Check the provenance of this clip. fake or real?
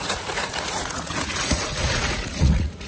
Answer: fake